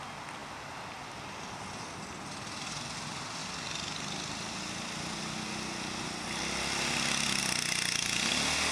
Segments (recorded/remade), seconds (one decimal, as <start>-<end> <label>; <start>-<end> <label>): 0.0-8.7 recorded